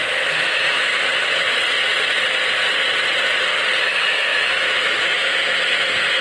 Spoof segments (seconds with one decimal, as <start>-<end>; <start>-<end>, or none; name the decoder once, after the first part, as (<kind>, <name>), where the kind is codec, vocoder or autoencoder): 0.0-0.9 (autoencoder, DAC-VAE); 3.8-6.2